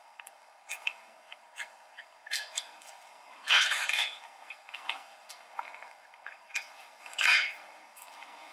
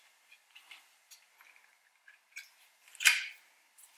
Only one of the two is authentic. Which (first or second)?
second